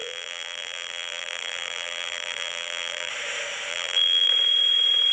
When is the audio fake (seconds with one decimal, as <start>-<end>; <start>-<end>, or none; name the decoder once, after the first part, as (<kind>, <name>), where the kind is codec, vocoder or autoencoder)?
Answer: 0.0-3.1 (vocoder, BigVGAN v2); 3.7-4.3